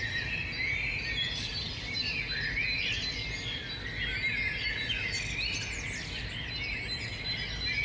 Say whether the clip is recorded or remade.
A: recorded